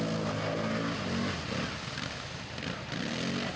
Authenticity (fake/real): real